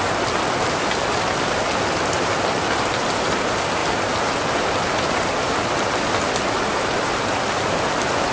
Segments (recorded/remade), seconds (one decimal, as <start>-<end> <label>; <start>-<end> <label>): 0.0-8.3 recorded